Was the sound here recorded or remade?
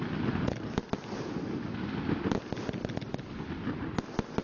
recorded